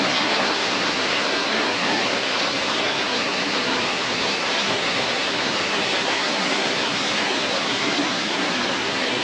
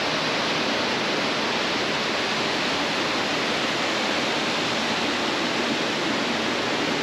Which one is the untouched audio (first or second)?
second